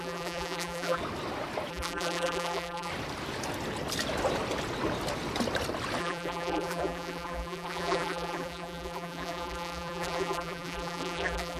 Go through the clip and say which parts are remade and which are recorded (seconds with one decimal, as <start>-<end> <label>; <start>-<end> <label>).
0.0-1.0 remade; 1.0-1.7 recorded; 1.7-2.9 remade; 2.9-6.0 recorded; 6.0-11.6 remade